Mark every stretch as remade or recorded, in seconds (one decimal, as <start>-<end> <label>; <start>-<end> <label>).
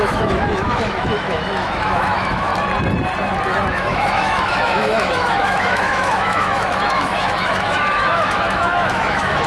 0.0-2.5 remade; 2.5-3.7 recorded; 3.7-9.5 remade